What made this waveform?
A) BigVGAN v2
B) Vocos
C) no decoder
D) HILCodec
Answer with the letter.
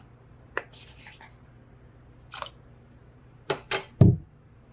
C